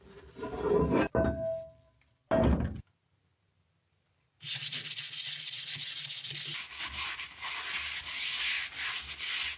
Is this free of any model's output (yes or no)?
yes